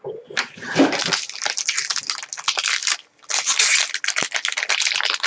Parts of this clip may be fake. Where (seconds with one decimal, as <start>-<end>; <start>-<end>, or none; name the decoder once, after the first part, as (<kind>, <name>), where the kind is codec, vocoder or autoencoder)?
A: none